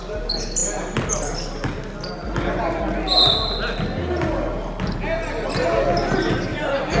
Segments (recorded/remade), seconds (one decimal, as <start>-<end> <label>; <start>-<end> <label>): 0.0-7.0 recorded